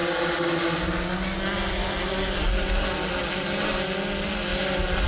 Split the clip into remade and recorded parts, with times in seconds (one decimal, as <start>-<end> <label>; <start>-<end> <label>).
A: 0.0-5.1 recorded